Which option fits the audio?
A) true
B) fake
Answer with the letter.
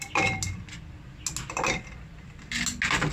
A